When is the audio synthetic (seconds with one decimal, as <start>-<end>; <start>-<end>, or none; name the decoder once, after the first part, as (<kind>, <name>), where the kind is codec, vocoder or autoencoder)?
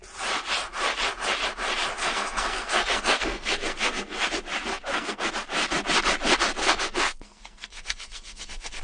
2.0-4.3 (codec, SNAC); 4.7-5.3; 6.6-8.8